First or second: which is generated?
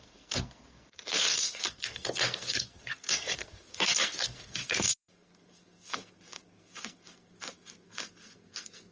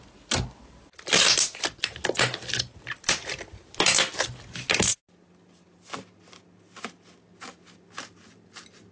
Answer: first